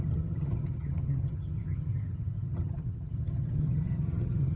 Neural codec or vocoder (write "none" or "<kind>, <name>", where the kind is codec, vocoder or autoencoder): vocoder, HiFi-GAN